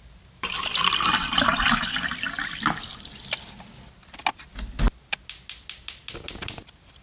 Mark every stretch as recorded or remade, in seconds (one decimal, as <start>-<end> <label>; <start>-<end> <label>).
0.0-7.0 recorded